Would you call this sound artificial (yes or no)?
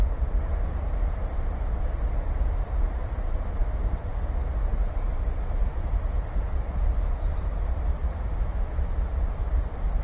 yes